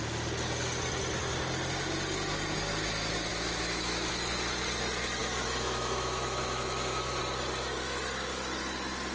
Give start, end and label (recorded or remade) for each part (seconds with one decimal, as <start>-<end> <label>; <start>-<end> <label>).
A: 0.0-3.3 recorded; 3.3-4.1 remade; 4.1-5.2 recorded; 5.2-7.2 remade; 7.2-9.1 recorded